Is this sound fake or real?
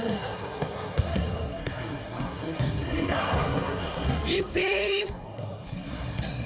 fake